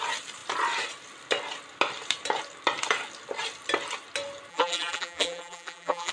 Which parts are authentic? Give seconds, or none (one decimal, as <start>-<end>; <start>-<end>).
0.0-4.5